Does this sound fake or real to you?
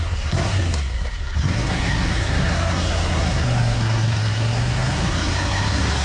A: fake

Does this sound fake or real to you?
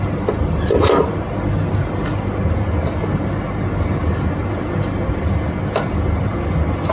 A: real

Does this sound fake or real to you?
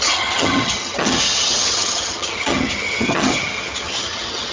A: fake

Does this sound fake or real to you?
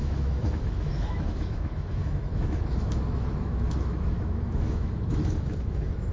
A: fake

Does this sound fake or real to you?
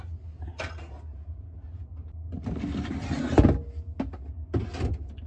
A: real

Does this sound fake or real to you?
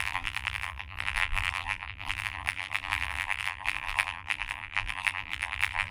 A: fake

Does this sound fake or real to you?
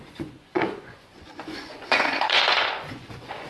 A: fake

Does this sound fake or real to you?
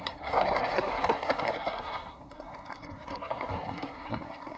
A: fake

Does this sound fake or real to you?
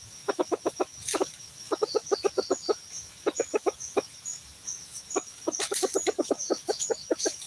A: fake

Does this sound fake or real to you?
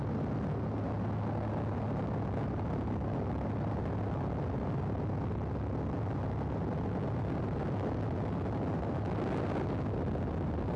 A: real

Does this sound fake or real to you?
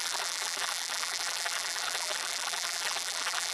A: fake